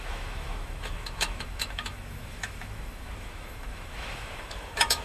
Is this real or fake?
fake